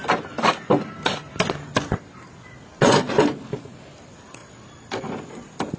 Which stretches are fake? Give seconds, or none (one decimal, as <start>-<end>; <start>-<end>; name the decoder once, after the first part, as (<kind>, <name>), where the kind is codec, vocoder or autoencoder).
none